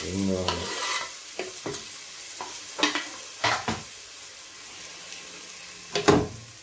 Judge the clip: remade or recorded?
recorded